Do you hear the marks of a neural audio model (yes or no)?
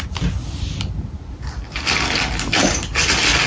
no